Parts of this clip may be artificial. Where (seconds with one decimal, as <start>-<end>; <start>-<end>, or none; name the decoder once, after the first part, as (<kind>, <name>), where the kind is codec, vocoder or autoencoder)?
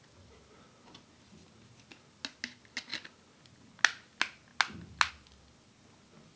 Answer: none